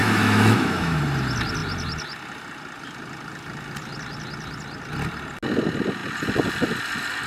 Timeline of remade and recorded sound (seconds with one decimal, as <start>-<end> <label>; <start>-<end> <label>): 0.0-1.0 remade; 1.0-7.3 recorded